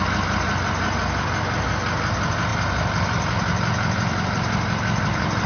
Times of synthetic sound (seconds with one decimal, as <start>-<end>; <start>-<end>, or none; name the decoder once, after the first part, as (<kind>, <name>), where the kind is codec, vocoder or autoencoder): 2.5-5.5 (vocoder, BigVGAN v2)